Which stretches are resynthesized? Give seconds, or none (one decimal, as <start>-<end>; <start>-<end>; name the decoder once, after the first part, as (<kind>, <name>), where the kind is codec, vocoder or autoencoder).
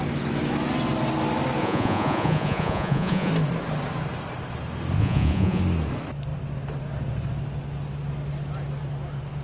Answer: 1.6-3.3 (vocoder, Vocos); 5.0-5.6